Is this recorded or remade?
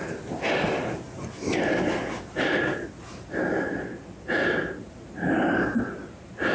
recorded